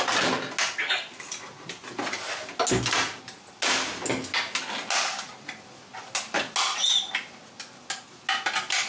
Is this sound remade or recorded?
recorded